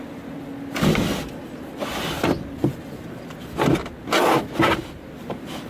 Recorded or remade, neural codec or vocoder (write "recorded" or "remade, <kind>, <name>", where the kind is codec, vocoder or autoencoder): recorded